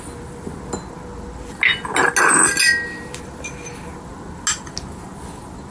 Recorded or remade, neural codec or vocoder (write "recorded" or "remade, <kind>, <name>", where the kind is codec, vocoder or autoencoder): recorded